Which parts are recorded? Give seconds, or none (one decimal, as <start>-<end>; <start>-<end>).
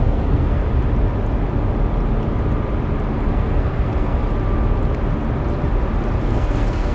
0.6-3.3; 4.2-6.2